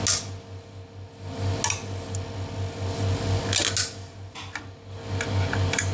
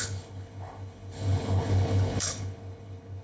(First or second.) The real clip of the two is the first